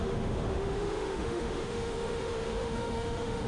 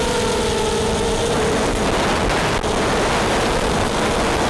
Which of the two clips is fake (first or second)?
first